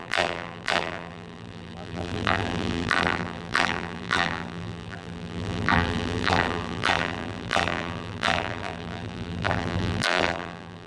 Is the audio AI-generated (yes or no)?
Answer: yes